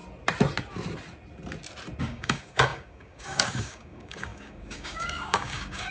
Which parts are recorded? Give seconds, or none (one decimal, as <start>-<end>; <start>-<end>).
0.0-2.0